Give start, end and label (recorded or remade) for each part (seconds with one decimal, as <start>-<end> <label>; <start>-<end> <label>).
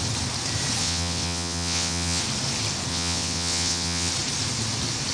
0.0-0.8 recorded; 0.8-2.2 remade; 2.2-2.9 recorded; 2.9-4.1 remade; 4.1-5.1 recorded